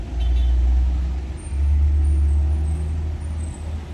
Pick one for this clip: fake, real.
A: real